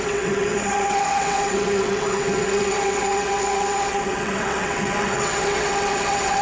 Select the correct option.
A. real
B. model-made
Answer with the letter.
B